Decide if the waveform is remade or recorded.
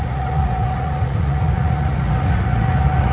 remade